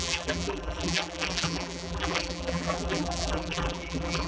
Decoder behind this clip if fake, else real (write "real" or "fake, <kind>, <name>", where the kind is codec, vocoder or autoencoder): fake, vocoder, BigVGAN v2